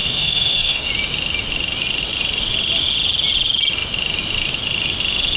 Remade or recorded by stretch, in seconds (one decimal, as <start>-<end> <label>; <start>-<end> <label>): 0.0-0.9 remade; 0.9-5.4 recorded